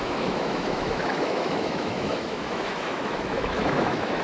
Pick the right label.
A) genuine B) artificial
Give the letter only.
B